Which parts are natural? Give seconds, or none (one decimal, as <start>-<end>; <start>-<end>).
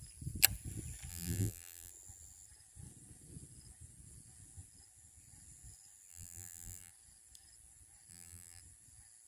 0.0-1.1; 1.9-6.1; 6.9-8.1; 8.6-9.3